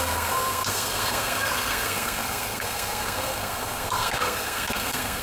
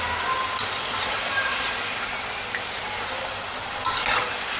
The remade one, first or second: first